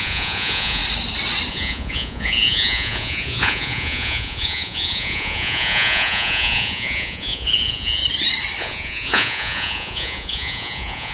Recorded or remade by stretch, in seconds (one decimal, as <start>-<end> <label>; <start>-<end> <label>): 0.0-0.8 remade; 0.8-1.5 recorded; 1.5-8.0 remade; 8.0-8.6 recorded; 8.6-11.1 remade